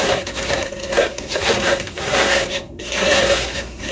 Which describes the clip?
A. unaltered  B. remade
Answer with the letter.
B